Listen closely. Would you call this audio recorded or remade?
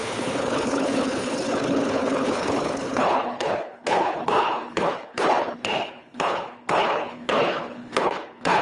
remade